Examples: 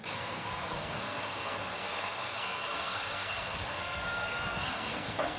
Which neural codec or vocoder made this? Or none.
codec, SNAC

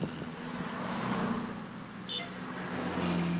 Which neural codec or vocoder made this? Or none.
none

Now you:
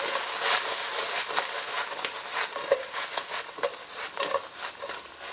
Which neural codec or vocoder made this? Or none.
none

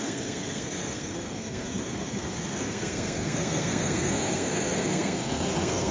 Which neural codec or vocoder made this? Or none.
codec, SNAC